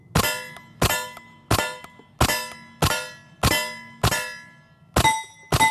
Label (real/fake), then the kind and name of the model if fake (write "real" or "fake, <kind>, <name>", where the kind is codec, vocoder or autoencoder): real